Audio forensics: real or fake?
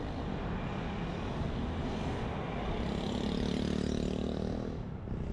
real